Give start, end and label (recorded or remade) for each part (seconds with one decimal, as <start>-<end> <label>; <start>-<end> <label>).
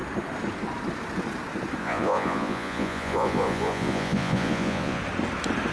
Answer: 0.0-1.8 recorded; 1.8-5.0 remade; 5.0-5.7 recorded